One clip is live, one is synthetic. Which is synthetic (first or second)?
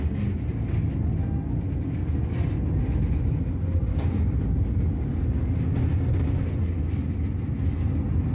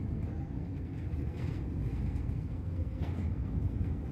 second